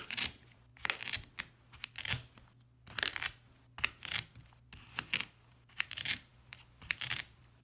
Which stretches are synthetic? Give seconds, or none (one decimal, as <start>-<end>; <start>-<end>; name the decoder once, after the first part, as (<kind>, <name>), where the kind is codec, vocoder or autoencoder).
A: 0.0-0.7 (vocoder, BigVGAN v2); 5.2-7.6